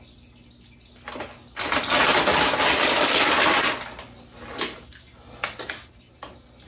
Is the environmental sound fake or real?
real